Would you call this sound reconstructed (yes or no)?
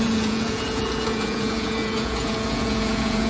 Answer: yes